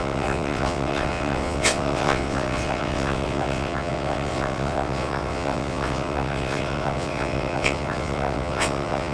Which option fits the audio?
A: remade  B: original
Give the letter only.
A